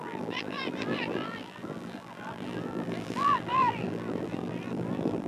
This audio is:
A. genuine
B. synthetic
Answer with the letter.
B